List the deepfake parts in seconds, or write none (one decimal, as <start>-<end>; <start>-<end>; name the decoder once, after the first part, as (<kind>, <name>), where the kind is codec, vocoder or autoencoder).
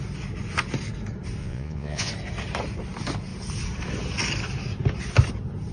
1.4-2.1 (vocoder, Vocos)